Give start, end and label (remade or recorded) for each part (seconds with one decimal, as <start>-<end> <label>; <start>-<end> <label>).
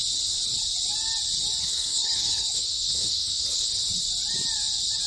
0.0-1.6 recorded; 1.6-3.7 remade; 3.7-5.1 recorded